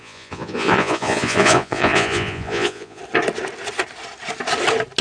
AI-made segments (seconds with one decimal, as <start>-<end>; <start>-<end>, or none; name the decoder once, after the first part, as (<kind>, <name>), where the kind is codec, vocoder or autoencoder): 0.0-3.0 (vocoder, Vocos)